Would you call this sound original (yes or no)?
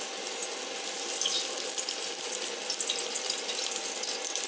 yes